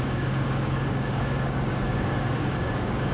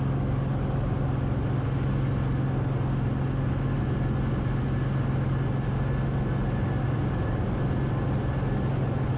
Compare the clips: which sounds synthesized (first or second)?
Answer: first